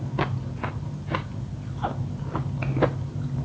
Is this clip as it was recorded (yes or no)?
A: yes